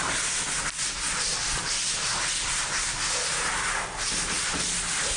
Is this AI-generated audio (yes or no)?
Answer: no